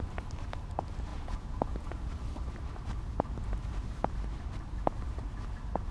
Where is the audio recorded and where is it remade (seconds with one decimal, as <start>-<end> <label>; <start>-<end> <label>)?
0.0-1.1 recorded; 1.1-2.1 remade; 2.1-5.9 recorded